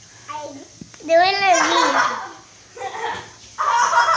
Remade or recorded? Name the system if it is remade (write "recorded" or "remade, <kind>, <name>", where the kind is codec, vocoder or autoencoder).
recorded